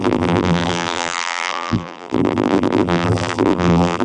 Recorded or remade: remade